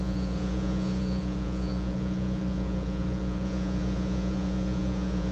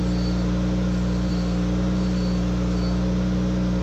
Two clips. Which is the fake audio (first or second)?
first